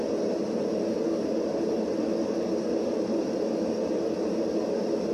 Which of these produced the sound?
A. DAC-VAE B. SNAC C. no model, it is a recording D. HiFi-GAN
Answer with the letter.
C